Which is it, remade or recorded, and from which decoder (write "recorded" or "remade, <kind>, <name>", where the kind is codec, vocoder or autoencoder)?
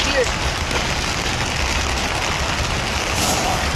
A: recorded